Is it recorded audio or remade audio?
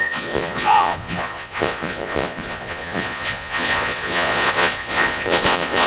remade